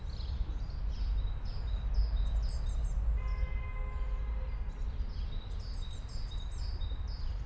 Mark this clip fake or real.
real